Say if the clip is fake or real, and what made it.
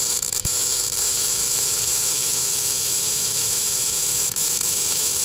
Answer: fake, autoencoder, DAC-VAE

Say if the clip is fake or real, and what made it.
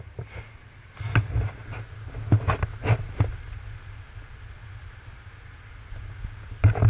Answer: real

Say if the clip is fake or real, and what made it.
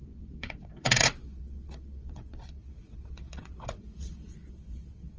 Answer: fake, vocoder, WaveNeXt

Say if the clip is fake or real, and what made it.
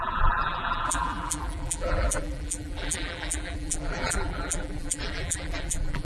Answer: fake, vocoder, BigVGAN v2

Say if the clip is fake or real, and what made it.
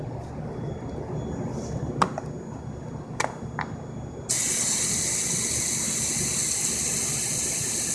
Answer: real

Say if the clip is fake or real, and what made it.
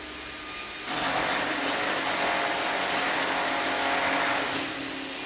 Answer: real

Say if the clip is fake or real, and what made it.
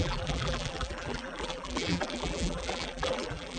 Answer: fake, vocoder, BigVGAN v2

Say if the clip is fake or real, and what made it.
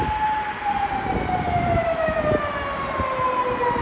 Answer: real